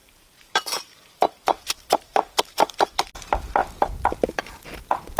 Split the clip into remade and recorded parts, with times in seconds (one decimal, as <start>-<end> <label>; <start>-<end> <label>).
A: 0.0-3.1 remade; 3.1-5.2 recorded